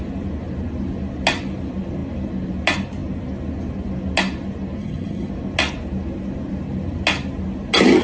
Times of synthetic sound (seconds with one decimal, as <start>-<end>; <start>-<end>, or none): 4.8-5.3